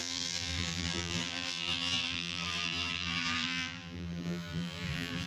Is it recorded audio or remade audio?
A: remade